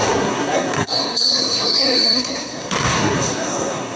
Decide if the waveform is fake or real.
fake